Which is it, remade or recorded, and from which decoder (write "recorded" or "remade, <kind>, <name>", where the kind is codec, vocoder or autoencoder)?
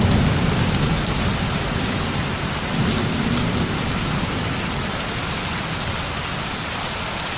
recorded